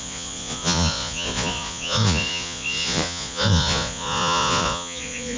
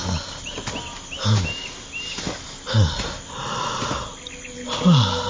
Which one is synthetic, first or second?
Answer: first